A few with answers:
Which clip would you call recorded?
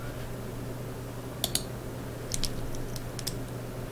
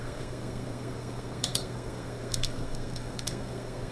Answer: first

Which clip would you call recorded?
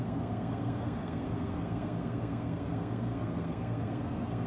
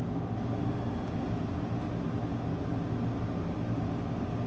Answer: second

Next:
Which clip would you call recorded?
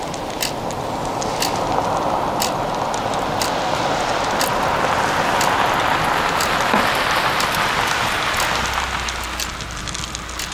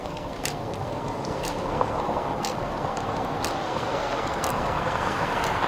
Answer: first